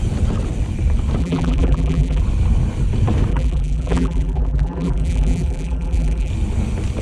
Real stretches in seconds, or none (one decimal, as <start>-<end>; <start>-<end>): 0.0-1.2; 2.2-3.3; 6.3-7.0